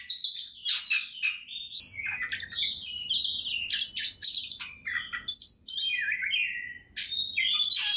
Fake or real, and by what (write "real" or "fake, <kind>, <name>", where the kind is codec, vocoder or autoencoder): real